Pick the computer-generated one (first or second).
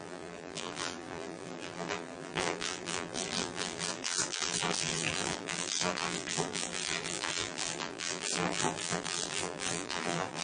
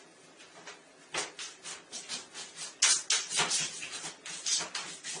first